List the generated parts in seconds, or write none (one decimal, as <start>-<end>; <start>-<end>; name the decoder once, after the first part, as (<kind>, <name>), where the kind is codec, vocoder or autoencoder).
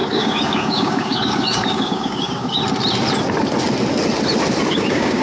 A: 0.0-2.6 (codec, DAC); 4.7-5.2